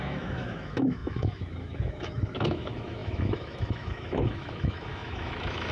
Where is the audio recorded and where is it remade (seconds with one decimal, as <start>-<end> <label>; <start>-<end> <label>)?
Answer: 0.0-5.7 remade